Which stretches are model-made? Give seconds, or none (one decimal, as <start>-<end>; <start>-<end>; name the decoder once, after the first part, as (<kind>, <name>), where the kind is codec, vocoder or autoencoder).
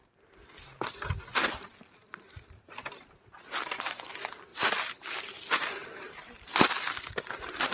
2.0-3.3 (vocoder, BigVGAN v2); 4.5-6.4